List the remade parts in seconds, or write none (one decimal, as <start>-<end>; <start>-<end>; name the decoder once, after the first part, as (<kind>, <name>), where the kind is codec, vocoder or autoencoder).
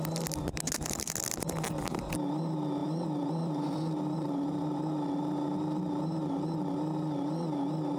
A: 2.8-4.6 (vocoder, BigVGAN v2)